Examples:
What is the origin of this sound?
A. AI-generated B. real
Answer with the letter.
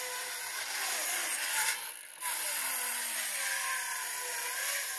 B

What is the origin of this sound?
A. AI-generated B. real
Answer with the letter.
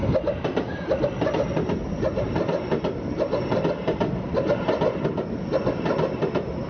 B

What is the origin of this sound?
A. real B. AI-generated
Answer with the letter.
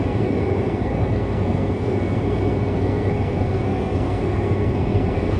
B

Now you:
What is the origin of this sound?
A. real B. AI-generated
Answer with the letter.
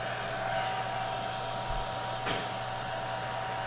A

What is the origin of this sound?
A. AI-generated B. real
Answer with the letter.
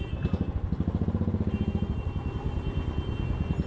B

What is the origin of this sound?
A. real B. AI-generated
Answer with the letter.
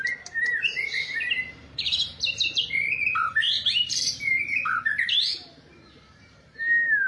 B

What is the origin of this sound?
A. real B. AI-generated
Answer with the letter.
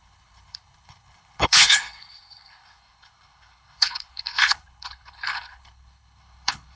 B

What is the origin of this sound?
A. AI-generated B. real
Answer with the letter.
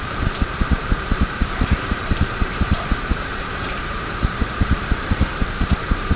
A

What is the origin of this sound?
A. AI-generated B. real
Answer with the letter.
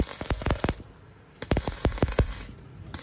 B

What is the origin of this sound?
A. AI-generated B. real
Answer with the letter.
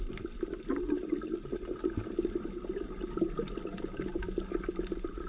B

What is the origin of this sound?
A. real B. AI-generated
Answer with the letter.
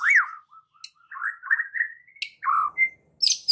A